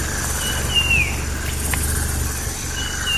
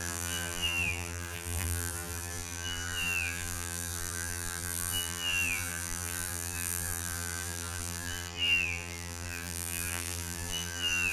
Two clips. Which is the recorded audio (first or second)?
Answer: first